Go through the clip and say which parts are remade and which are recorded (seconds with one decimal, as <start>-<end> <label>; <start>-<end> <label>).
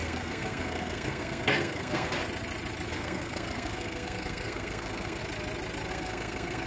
0.0-2.2 remade; 2.2-2.9 recorded; 2.9-5.2 remade; 5.2-5.9 recorded; 5.9-6.7 remade